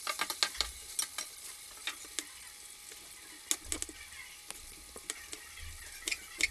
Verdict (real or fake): real